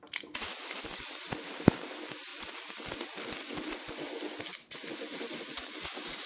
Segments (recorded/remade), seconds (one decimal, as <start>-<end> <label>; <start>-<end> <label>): 0.0-6.3 recorded